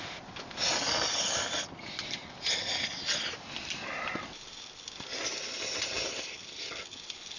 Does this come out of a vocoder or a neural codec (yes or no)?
no